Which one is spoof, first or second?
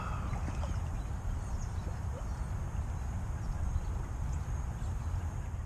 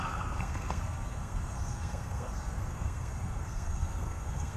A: second